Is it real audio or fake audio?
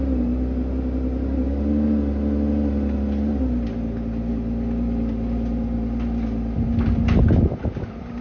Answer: real